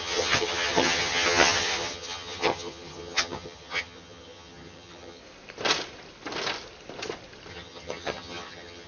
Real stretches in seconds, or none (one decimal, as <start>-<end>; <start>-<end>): 5.2-7.5